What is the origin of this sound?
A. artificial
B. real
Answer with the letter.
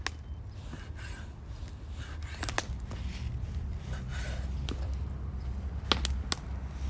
B